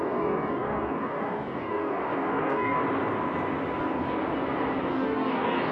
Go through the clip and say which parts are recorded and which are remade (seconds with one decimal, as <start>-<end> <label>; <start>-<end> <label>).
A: 0.0-2.8 remade; 2.8-3.8 recorded; 3.8-4.2 remade; 4.2-4.8 recorded; 4.8-5.7 remade

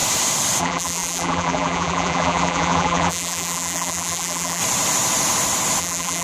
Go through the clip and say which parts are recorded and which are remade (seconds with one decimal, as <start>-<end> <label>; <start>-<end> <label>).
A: 0.0-0.6 recorded; 0.6-4.6 remade; 4.6-5.8 recorded; 5.8-6.2 remade

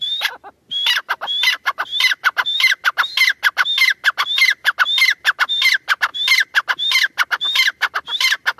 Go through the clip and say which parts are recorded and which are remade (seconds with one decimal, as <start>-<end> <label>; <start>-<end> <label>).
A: 0.0-8.6 recorded

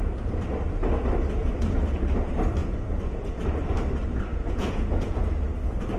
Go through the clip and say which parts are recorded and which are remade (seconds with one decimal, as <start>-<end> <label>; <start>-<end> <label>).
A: 0.0-1.4 recorded; 1.4-2.0 remade; 2.0-2.6 recorded; 2.6-3.4 remade; 3.4-4.3 recorded; 4.3-5.3 remade; 5.3-6.0 recorded